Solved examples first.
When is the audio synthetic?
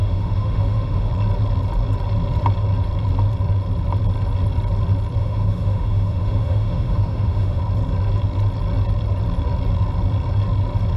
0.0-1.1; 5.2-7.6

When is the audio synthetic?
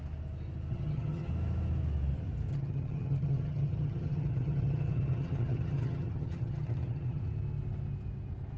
0.7-1.3; 2.5-7.2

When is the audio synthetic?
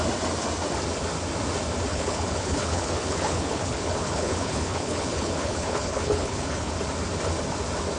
1.9-6.7